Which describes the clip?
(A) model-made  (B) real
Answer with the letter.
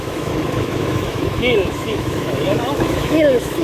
A